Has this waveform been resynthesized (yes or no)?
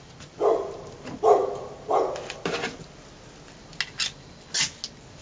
no